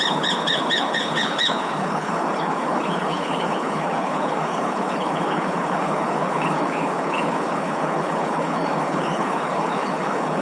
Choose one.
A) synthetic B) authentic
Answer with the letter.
A